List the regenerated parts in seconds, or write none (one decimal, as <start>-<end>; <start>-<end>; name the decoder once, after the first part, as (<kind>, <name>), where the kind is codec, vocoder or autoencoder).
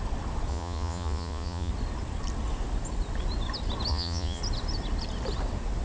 0.5-1.7 (vocoder, Vocos); 3.9-4.4